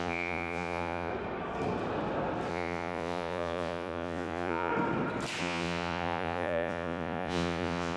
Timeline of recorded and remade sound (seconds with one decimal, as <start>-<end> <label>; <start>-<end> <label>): 0.0-1.1 remade; 1.1-2.5 recorded; 2.5-4.7 remade; 4.7-5.4 recorded; 5.4-8.0 remade